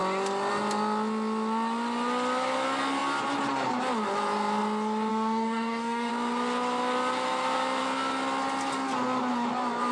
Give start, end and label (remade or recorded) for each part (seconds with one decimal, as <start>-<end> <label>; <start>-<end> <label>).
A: 0.0-5.1 recorded; 5.1-6.1 remade; 6.1-9.9 recorded